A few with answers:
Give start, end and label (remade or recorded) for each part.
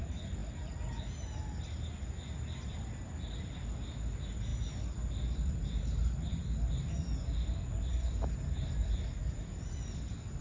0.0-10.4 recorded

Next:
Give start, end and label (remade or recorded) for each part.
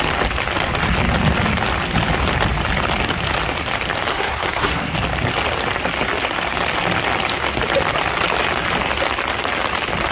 0.0-4.1 recorded; 4.1-4.9 remade; 4.9-10.1 recorded